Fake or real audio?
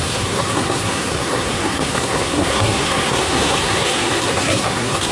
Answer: fake